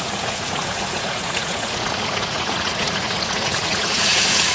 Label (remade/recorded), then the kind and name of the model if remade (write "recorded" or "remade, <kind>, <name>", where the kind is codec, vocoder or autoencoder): remade, vocoder, Vocos